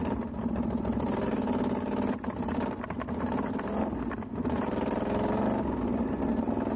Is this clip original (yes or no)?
yes